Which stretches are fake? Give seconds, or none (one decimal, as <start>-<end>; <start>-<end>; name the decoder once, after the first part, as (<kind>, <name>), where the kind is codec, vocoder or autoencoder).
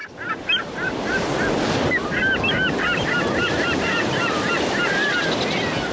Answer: none